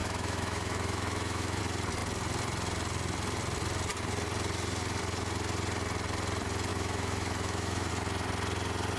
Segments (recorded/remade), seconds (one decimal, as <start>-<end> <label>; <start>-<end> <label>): 0.0-1.6 remade; 1.6-6.7 recorded; 6.7-7.9 remade; 7.9-9.0 recorded

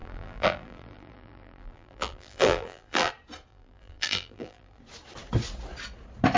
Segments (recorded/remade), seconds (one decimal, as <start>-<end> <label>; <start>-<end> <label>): 0.0-3.1 remade; 3.1-3.5 recorded; 3.5-4.8 remade; 4.8-6.4 recorded

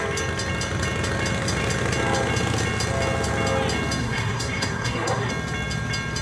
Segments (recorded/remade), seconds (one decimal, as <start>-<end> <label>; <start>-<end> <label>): 0.0-4.0 recorded; 4.0-5.3 remade; 5.3-6.2 recorded

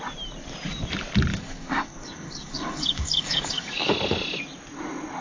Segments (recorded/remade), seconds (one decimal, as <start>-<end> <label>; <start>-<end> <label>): 0.0-1.3 recorded; 1.3-3.9 remade; 3.9-5.2 recorded

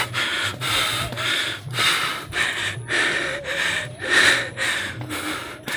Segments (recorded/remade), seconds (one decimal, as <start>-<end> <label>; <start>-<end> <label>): 0.0-5.8 recorded

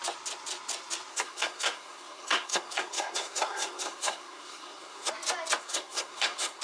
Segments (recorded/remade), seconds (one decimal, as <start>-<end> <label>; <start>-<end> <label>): 0.0-1.1 recorded; 1.1-5.1 remade; 5.1-5.6 recorded; 5.6-6.6 remade